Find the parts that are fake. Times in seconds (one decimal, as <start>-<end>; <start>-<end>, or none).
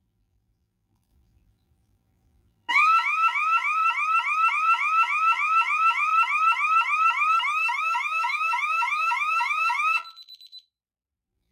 0.0-3.8; 4.5-6.1; 7.8-11.5